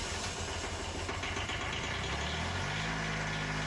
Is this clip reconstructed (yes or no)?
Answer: no